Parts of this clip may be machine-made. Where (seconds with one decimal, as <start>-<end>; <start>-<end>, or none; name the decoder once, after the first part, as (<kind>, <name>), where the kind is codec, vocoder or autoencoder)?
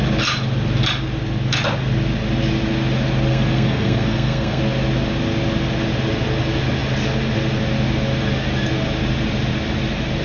3.3-4.6 (codec, SNAC)